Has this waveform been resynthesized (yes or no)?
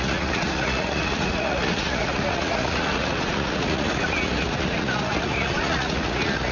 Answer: yes